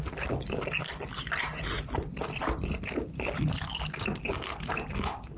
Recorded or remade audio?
recorded